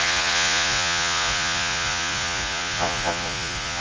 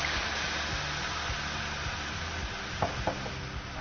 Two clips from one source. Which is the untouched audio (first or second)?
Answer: second